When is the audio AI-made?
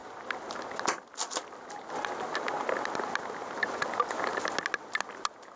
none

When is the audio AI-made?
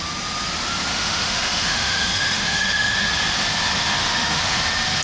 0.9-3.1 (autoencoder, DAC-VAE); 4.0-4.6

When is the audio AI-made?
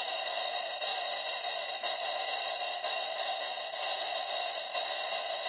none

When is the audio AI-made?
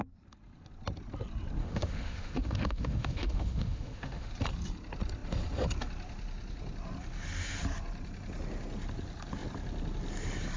1.6-4.3 (autoencoder, DAC-VAE)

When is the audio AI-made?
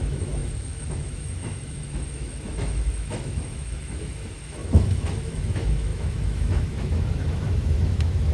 0.0-8.3 (autoencoder, DAC-VAE)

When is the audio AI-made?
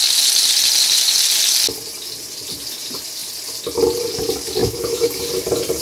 4.6-5.2 (autoencoder, DAC-VAE)